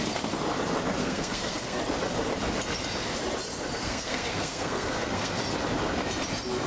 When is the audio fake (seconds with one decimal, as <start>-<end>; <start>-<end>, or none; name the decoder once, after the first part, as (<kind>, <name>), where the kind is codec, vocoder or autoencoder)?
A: 1.0-1.8 (codec, SNAC); 3.8-5.4